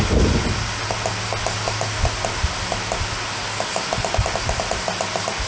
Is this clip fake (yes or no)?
no